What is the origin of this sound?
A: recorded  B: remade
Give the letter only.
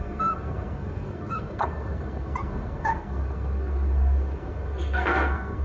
B